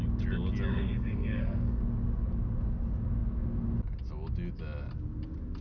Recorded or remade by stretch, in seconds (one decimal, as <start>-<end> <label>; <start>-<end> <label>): 0.0-0.7 recorded; 0.7-1.8 remade; 1.8-5.6 recorded